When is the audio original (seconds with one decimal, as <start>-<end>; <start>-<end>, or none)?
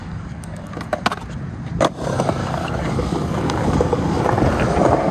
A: 1.0-2.4; 4.2-5.1